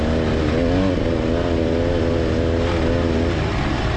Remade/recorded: recorded